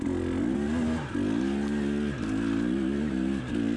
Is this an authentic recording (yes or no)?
yes